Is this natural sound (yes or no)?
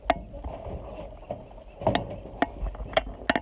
yes